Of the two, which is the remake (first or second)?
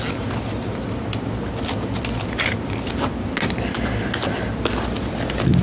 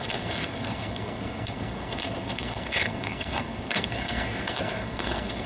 second